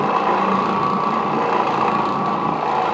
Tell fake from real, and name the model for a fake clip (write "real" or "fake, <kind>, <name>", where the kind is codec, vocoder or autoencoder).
real